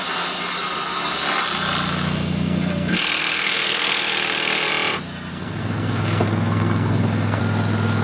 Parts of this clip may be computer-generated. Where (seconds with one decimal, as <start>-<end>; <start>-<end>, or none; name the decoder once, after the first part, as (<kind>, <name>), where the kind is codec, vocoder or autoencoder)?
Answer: 1.9-4.7 (codec, SNAC); 5.3-7.4